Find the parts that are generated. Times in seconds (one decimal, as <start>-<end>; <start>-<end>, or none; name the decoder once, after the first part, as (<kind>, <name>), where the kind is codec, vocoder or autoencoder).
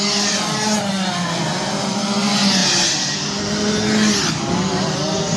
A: none